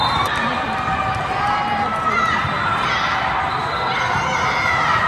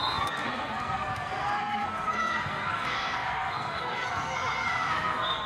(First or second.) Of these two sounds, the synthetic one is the second